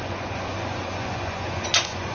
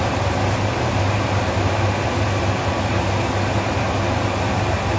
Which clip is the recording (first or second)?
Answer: second